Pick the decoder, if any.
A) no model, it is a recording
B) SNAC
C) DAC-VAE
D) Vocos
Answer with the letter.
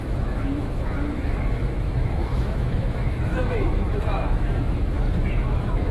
C